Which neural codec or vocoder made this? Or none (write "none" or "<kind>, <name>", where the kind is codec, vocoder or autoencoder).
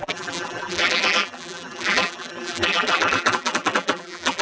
vocoder, BigVGAN v2